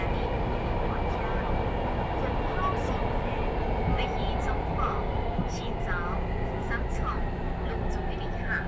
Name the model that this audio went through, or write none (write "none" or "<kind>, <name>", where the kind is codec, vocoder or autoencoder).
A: none